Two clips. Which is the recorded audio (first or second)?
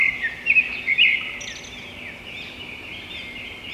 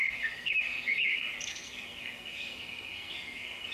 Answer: first